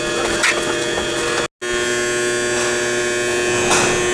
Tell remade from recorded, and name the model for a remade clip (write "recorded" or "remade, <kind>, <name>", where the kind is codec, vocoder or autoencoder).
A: recorded